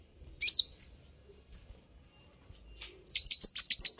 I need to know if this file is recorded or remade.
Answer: recorded